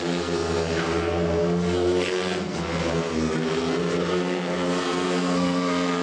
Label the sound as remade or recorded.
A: remade